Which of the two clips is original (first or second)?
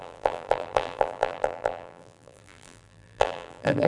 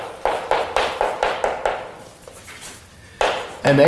second